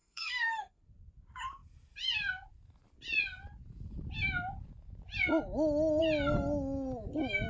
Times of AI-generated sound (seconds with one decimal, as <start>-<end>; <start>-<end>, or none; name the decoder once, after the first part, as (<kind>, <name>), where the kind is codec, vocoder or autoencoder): 0.0-0.8 (codec, SNAC)